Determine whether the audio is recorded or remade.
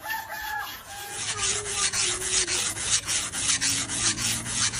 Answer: remade